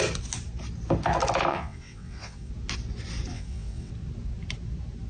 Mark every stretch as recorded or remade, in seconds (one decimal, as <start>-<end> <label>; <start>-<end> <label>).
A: 0.0-1.5 recorded; 1.5-2.5 remade; 2.5-3.3 recorded; 3.3-3.9 remade; 3.9-5.1 recorded